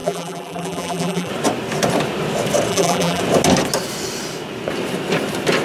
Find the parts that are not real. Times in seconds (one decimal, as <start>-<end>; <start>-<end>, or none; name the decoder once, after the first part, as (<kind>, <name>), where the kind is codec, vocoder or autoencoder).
0.0-1.3 (vocoder, BigVGAN v2); 2.7-3.2